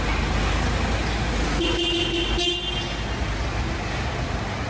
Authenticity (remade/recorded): recorded